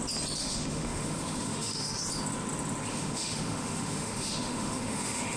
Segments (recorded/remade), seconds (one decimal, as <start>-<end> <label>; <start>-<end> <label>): 0.0-0.4 recorded; 0.4-2.0 remade; 2.0-2.9 recorded; 2.9-5.4 remade